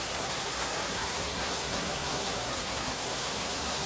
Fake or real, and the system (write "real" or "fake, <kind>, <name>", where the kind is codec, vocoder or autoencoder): fake, codec, SNAC